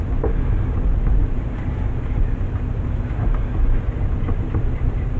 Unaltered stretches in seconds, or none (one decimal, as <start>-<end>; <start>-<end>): none